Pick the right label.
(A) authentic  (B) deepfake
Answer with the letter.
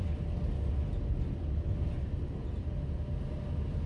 A